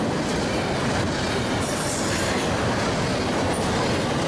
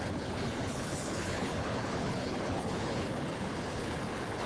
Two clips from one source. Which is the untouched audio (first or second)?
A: first